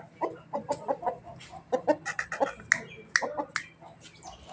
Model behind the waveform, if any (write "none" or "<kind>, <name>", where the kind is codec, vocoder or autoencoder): none